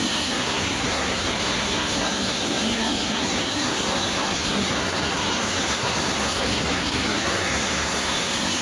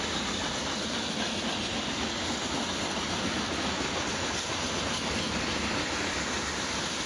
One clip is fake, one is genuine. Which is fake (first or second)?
first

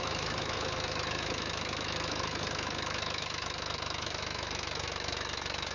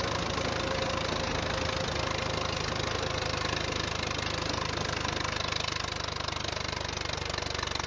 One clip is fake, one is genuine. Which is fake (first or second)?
first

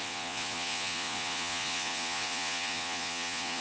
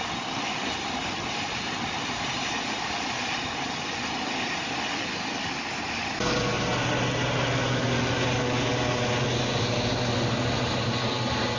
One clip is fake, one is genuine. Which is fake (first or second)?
first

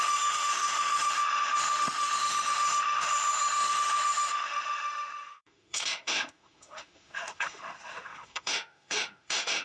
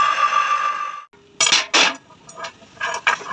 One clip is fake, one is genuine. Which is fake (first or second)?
first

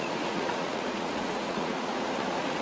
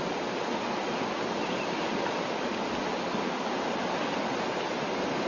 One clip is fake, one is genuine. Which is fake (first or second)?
first